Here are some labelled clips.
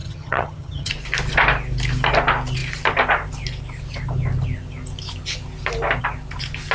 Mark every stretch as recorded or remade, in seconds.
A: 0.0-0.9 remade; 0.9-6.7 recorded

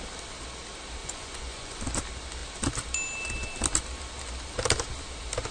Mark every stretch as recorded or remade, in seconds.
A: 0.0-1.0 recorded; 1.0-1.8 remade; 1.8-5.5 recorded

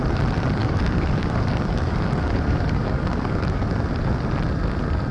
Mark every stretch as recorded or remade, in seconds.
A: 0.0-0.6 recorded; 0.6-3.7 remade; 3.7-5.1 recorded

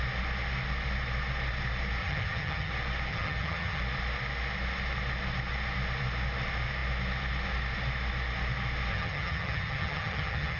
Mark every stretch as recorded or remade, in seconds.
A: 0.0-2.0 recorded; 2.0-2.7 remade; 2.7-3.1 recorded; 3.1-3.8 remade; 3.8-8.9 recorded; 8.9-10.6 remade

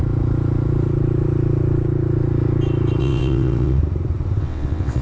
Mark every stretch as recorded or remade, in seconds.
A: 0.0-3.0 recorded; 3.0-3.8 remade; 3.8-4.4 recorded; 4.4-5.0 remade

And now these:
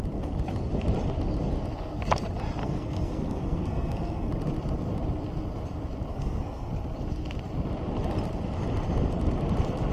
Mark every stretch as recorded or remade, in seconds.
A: 0.0-2.6 recorded; 2.6-4.3 remade; 4.3-6.1 recorded; 6.1-6.7 remade; 6.7-9.9 recorded

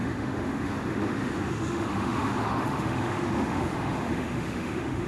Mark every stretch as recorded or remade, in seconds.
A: 0.0-5.1 remade